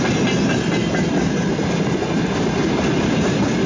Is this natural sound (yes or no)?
yes